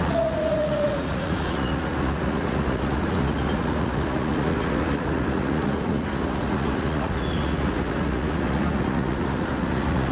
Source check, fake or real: fake